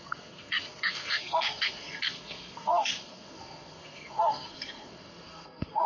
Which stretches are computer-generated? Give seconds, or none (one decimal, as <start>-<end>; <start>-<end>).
0.0-5.9